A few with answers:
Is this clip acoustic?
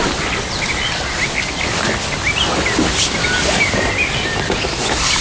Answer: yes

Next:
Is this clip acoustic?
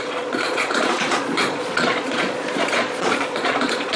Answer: no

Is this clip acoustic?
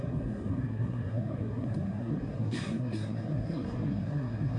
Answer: no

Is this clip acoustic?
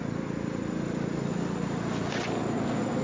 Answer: yes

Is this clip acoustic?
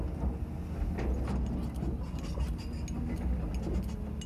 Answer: yes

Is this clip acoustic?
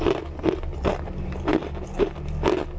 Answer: yes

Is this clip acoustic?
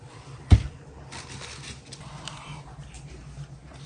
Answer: yes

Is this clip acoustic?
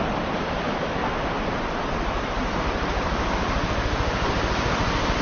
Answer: no